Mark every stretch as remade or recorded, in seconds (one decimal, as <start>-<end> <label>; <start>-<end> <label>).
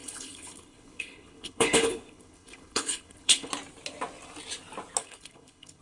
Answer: 0.0-3.5 remade; 3.5-5.0 recorded; 5.0-5.8 remade